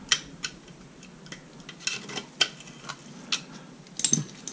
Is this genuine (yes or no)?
yes